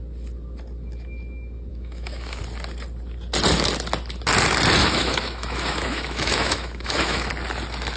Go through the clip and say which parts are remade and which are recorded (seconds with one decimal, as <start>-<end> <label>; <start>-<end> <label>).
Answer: 0.0-1.7 recorded; 1.7-2.4 remade; 2.4-4.8 recorded; 4.8-7.3 remade; 7.3-8.0 recorded